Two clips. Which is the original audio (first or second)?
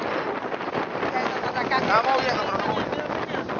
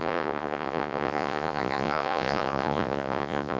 first